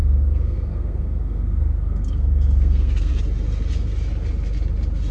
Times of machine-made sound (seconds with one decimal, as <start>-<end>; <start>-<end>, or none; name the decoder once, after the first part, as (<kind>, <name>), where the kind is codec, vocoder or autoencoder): 0.0-3.1 (codec, SNAC)